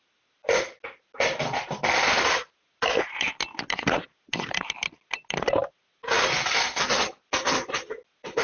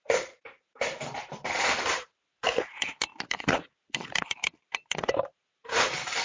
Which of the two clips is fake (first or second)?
second